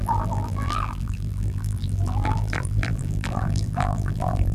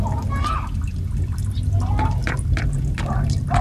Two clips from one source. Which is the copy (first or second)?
first